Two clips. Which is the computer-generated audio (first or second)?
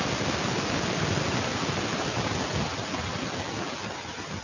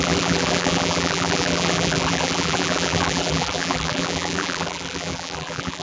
second